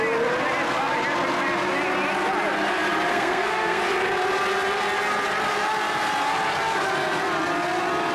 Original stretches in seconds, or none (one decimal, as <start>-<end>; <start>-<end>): 0.0-3.1; 3.8-8.1